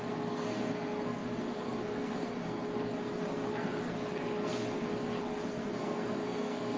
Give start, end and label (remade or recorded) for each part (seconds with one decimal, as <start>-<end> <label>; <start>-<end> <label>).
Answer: 0.0-6.8 remade

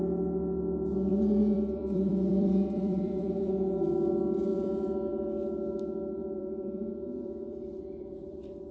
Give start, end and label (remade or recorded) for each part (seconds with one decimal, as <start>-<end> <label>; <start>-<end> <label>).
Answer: 0.0-1.1 recorded; 1.1-3.5 remade; 3.5-4.5 recorded; 4.5-5.1 remade; 5.1-6.2 recorded; 6.2-8.7 remade